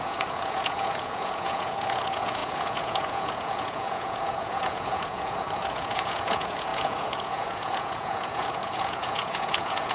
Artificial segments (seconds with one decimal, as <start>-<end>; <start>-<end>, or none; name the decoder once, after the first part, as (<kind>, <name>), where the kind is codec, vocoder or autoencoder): 0.0-9.9 (vocoder, Vocos)

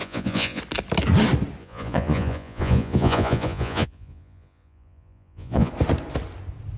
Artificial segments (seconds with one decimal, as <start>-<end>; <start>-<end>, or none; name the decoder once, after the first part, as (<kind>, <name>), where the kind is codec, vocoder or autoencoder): 0.0-0.6 (vocoder, Vocos); 1.6-5.7

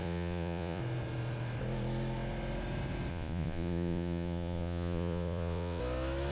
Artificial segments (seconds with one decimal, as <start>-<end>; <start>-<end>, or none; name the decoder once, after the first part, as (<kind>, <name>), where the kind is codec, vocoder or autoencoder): 0.0-0.8 (vocoder, Vocos); 3.1-5.8

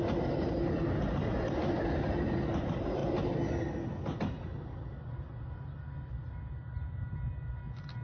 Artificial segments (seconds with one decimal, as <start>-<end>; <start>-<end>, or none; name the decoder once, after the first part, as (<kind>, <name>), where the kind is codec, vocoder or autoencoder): none

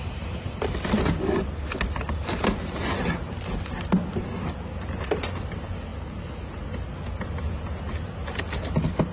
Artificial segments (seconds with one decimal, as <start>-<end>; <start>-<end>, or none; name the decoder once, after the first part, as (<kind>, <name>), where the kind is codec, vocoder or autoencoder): none

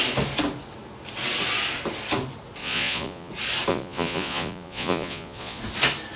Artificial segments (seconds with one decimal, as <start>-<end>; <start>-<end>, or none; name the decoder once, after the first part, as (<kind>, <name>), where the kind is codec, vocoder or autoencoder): 2.6-3.3 (vocoder, Vocos); 3.7-5.6

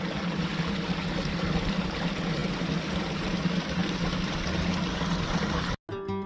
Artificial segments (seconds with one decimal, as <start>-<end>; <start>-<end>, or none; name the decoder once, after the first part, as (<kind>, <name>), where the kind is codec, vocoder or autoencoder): none